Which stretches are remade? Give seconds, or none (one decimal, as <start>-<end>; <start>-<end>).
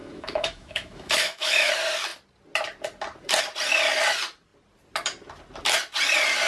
0.0-1.7